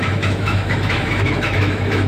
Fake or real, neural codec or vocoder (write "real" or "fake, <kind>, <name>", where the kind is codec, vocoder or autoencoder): fake, autoencoder, DAC-VAE